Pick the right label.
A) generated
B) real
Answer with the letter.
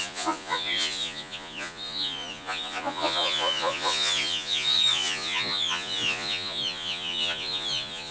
A